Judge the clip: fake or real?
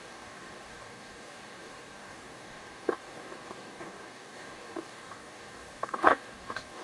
fake